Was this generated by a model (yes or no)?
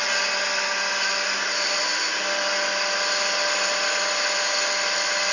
no